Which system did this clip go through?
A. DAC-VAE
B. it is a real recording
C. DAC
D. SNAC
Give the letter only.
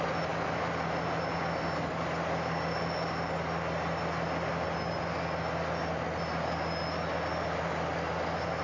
B